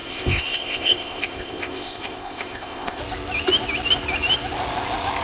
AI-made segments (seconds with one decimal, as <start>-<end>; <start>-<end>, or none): 0.0-3.0